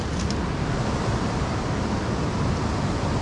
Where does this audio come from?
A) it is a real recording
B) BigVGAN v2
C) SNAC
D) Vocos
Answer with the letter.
A